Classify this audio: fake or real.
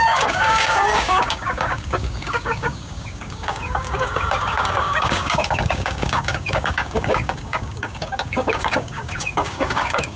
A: fake